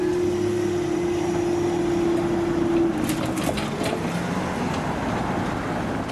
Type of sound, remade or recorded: recorded